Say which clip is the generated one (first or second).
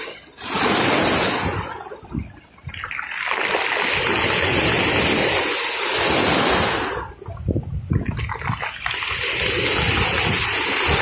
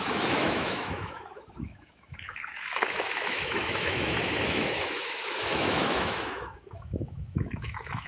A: second